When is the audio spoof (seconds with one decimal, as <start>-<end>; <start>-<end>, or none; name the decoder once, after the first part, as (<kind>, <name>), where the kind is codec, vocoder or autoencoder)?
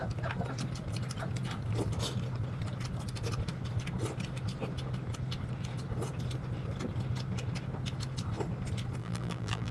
9.0-9.7 (vocoder, BigVGAN v2)